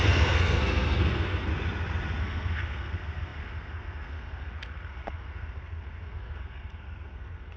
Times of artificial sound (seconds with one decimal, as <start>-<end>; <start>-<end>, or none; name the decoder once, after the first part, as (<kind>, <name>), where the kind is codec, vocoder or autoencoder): 0.0-1.5 (codec, SNAC); 2.2-7.6